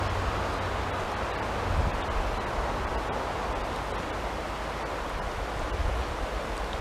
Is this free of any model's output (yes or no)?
yes